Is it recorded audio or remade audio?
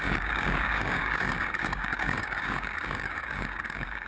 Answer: remade